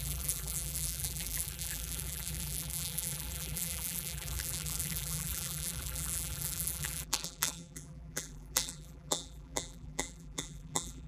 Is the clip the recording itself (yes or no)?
no